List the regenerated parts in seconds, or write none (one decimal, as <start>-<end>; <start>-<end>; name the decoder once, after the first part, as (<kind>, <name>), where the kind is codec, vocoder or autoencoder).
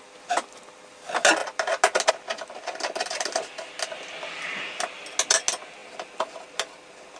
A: none